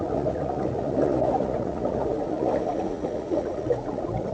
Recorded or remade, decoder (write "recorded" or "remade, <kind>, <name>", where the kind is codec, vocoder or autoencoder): remade, vocoder, Vocos